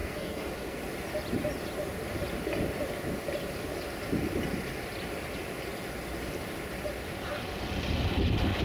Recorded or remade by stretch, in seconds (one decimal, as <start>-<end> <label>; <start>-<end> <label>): 0.0-0.8 remade; 0.8-8.6 recorded